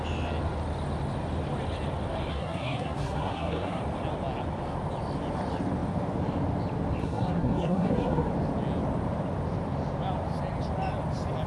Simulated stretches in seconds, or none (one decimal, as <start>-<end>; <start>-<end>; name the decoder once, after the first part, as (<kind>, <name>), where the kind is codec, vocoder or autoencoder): 2.3-3.8 (codec, SNAC); 7.0-8.3